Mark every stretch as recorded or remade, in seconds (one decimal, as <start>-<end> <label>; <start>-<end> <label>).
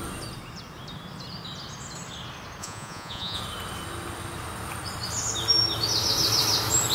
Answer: 0.0-2.6 recorded; 2.6-3.4 remade; 3.4-6.9 recorded